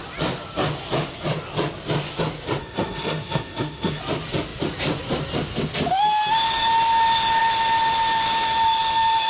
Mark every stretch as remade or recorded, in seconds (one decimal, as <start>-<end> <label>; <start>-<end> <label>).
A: 0.0-2.6 recorded; 2.6-4.0 remade; 4.0-9.3 recorded